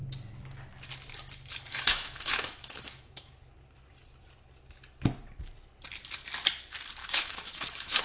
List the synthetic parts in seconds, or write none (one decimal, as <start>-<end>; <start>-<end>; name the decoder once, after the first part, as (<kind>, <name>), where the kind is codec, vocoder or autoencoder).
1.7-3.3 (autoencoder, DAC-VAE); 7.0-8.0